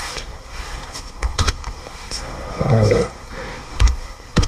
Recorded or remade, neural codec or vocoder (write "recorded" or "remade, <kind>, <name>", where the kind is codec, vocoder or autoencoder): remade, codec, SNAC